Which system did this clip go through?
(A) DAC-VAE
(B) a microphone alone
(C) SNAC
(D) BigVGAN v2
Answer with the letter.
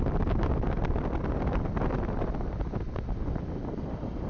B